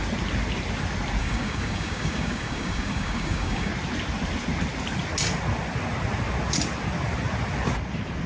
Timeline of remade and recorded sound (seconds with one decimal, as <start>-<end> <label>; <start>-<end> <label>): 0.0-1.2 recorded; 1.2-3.7 remade; 3.7-8.3 recorded